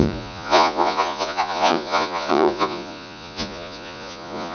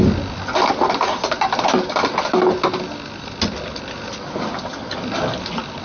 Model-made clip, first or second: first